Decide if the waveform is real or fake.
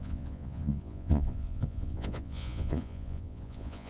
fake